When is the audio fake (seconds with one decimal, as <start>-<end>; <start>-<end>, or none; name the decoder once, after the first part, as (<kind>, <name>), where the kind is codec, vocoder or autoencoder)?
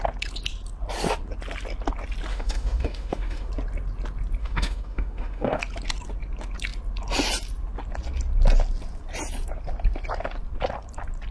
2.3-3.5 (autoencoder, DAC-VAE); 4.4-5.6